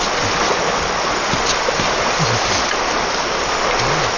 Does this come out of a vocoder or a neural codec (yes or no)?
no